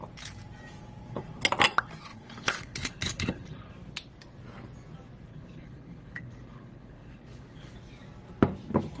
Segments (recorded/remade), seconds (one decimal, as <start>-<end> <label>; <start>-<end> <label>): 0.0-2.1 recorded; 2.1-3.7 remade; 3.7-5.3 recorded; 5.3-7.7 remade; 7.7-9.0 recorded